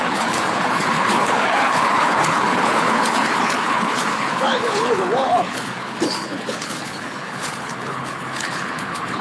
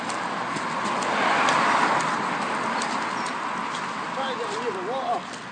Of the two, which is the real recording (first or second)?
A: second